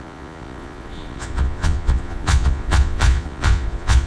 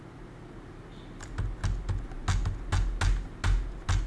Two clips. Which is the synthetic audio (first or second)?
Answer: first